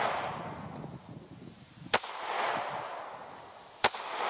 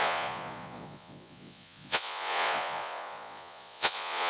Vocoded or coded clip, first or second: second